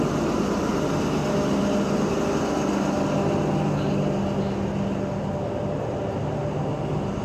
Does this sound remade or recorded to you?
recorded